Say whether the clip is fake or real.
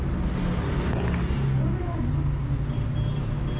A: real